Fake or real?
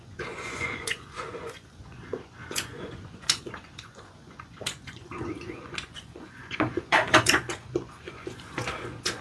fake